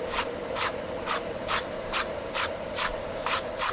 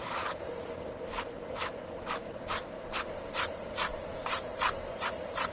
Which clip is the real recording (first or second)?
second